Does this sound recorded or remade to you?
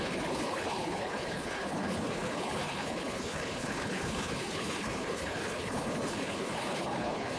remade